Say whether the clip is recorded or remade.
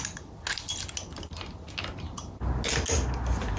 recorded